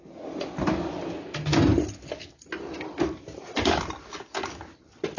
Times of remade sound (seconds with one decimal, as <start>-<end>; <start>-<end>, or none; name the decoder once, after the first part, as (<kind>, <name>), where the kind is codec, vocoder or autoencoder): none